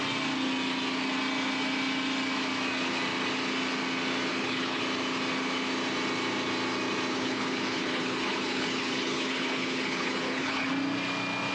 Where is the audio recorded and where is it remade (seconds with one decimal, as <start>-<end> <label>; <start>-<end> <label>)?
0.0-4.3 recorded; 4.3-4.8 remade; 4.8-7.1 recorded; 7.1-10.7 remade; 10.7-11.5 recorded